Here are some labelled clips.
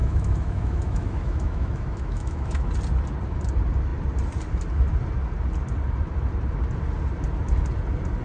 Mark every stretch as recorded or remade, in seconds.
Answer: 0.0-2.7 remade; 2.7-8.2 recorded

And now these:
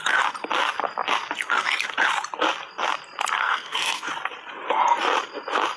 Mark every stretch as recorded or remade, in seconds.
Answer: 0.0-3.4 recorded; 3.4-4.1 remade; 4.1-5.8 recorded

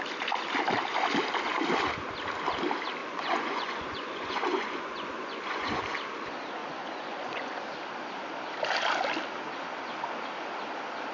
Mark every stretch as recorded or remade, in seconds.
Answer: 0.0-3.0 recorded; 3.0-5.8 remade; 5.8-6.6 recorded; 6.6-7.5 remade; 7.5-11.1 recorded

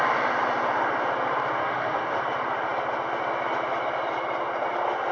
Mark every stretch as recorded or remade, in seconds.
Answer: 0.0-1.6 recorded; 1.6-2.2 remade; 2.2-5.1 recorded

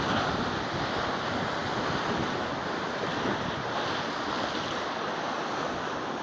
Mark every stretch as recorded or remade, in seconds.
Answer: 0.0-6.2 recorded

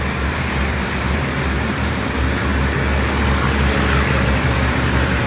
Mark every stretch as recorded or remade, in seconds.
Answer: 0.0-2.5 remade; 2.5-4.1 recorded; 4.1-5.3 remade

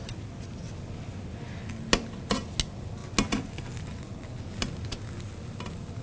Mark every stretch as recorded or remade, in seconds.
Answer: 0.0-6.0 recorded

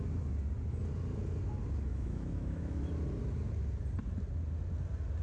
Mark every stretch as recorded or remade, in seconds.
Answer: 0.0-1.9 recorded; 1.9-2.9 remade; 2.9-5.2 recorded